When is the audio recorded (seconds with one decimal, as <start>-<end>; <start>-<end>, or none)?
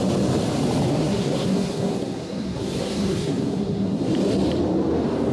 0.0-0.9; 4.1-5.3